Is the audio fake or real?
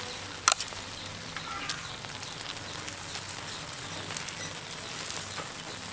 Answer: real